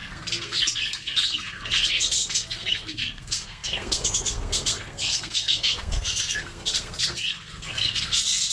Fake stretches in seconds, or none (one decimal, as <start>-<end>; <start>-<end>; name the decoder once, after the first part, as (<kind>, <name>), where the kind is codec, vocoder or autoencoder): 0.0-8.5 (codec, SNAC)